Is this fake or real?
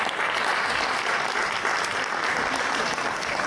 real